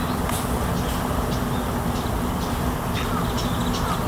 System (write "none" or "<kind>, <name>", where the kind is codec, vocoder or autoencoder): none